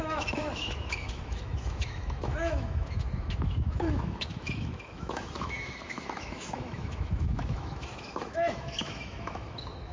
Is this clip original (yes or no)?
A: no